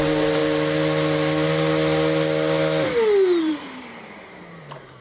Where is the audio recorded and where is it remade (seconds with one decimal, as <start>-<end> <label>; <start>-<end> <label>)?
0.0-0.4 remade; 0.4-3.4 recorded; 3.4-5.0 remade

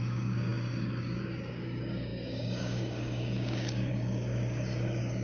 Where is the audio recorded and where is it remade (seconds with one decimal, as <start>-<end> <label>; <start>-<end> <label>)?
0.0-5.2 remade

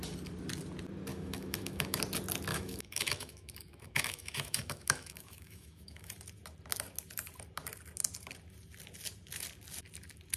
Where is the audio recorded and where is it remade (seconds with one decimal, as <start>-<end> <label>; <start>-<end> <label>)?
0.0-1.1 recorded; 1.1-2.0 remade; 2.0-2.5 recorded; 2.5-6.1 remade; 6.1-10.4 recorded

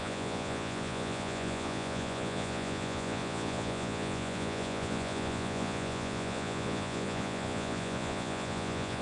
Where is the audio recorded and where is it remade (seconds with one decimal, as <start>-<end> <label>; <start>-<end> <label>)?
0.0-9.0 remade

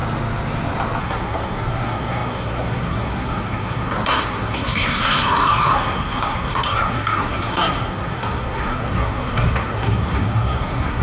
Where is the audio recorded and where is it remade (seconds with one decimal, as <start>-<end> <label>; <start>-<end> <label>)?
0.0-1.0 recorded; 1.0-11.0 remade

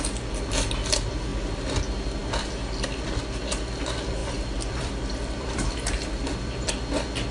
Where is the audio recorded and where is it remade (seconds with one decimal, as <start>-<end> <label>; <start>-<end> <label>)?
0.0-4.2 recorded; 4.2-6.7 remade; 6.7-7.3 recorded